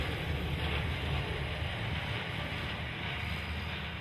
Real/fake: real